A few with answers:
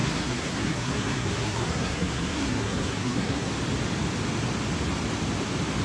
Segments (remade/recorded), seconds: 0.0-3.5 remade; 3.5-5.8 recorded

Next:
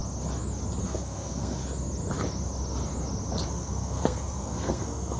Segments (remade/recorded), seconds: 0.0-0.8 recorded; 0.8-1.6 remade; 1.6-3.5 recorded; 3.5-5.2 remade

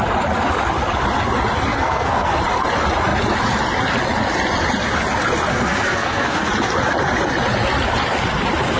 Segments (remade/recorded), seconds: 0.0-1.7 recorded; 1.7-2.3 remade; 2.3-5.5 recorded; 5.5-6.5 remade; 6.5-8.8 recorded

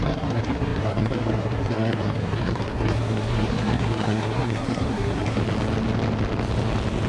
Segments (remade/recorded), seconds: 0.0-5.4 remade; 5.4-7.1 recorded